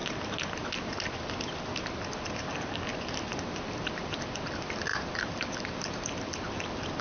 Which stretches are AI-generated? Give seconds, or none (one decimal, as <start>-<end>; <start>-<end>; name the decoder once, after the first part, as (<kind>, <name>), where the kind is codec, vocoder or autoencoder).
4.9-7.0 (vocoder, BigVGAN v2)